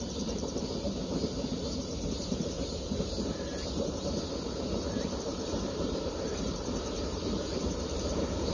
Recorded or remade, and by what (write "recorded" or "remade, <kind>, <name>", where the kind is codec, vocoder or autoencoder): remade, vocoder, BigVGAN v2